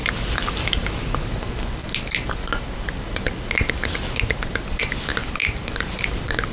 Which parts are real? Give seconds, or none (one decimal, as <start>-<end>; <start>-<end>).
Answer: 0.0-6.5